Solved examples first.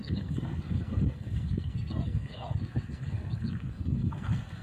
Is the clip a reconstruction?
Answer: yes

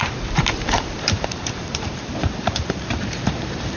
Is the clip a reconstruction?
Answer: yes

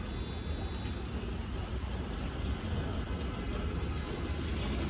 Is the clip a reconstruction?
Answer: no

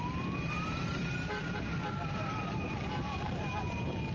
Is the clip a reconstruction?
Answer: yes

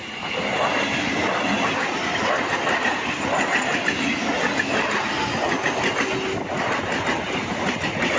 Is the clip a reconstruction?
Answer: no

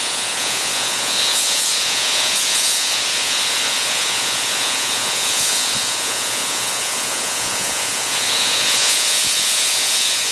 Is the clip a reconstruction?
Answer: yes